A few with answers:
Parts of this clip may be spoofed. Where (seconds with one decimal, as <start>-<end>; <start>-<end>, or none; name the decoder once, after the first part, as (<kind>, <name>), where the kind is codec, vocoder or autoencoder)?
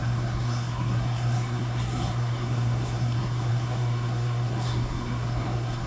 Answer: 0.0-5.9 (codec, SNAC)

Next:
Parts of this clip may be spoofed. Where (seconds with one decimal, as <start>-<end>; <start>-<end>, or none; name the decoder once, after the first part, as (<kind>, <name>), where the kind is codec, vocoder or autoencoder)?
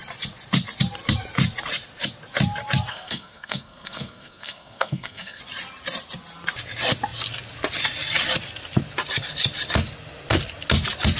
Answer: 2.9-5.4 (codec, SNAC)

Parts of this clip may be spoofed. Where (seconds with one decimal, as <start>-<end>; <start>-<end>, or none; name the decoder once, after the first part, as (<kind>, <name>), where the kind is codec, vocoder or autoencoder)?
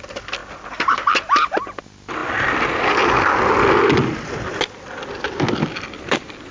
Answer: none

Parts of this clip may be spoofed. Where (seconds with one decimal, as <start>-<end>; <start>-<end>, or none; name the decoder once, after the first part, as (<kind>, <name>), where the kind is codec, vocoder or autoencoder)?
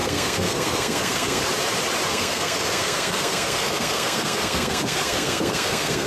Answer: 0.0-1.4 (codec, SNAC); 2.1-6.1